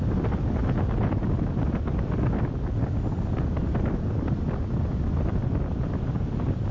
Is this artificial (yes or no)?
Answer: no